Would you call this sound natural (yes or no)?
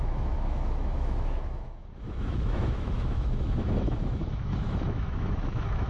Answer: no